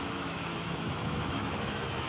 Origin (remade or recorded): remade